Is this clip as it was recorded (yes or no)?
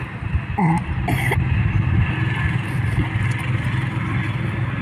yes